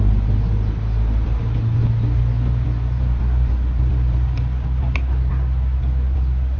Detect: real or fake real